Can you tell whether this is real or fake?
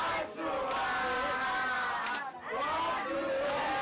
real